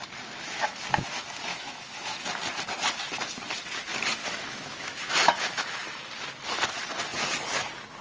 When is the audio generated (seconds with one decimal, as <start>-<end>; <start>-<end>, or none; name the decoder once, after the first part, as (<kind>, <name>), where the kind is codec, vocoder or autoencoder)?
1.5-2.3 (autoencoder, DAC-VAE); 4.2-6.1